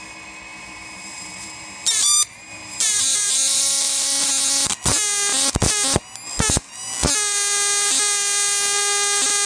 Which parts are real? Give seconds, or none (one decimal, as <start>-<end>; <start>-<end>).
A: 0.0-0.5; 4.3-9.5